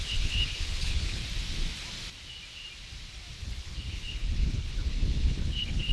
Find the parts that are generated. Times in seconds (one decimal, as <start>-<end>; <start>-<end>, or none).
0.0-1.2; 3.4-5.9